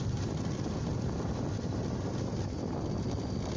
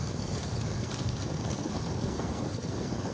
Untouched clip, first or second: first